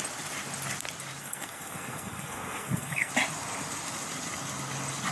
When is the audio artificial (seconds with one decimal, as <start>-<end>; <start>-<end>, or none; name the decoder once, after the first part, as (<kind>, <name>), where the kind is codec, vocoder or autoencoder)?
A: 1.2-3.1 (codec, SNAC)